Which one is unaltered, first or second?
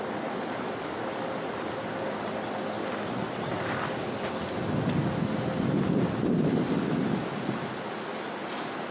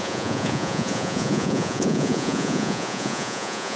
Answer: first